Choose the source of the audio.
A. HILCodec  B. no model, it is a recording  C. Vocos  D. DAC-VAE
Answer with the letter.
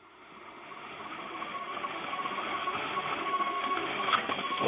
D